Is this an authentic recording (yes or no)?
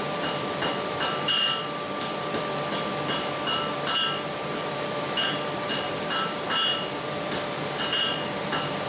no